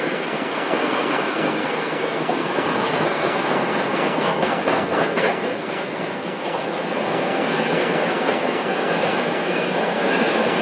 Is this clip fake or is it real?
fake